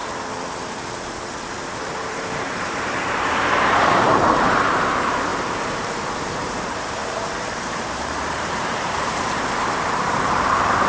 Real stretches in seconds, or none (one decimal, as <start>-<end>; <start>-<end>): 0.0-1.8; 5.3-5.8